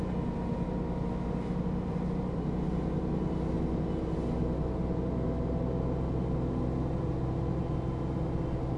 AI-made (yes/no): no